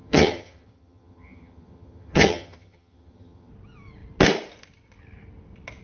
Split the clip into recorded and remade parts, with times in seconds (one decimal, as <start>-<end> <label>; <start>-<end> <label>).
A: 0.0-3.5 remade; 3.5-5.8 recorded